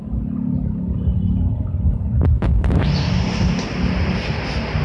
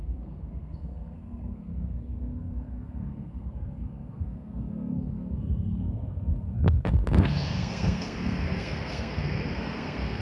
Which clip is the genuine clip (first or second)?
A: first